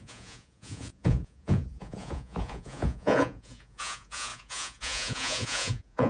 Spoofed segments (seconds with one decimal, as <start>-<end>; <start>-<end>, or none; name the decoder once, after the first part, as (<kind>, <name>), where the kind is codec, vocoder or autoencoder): 0.0-6.1 (vocoder, Vocos)